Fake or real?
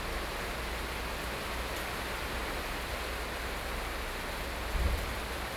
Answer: real